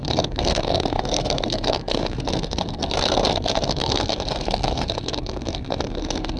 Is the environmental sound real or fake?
fake